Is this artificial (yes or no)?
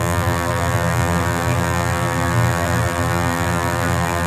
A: yes